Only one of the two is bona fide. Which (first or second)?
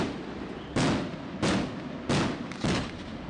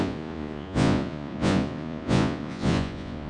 first